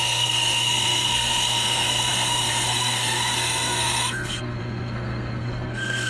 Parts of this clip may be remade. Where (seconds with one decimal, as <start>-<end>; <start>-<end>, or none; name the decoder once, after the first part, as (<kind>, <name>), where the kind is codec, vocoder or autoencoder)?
0.0-6.1 (codec, SNAC)